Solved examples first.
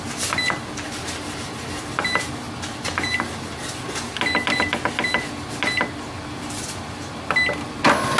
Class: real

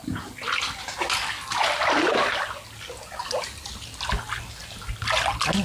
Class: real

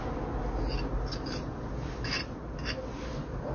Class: real